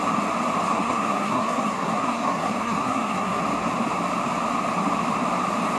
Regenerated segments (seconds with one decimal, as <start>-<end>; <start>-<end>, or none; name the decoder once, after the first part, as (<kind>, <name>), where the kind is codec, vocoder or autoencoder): 0.7-3.4 (codec, SNAC)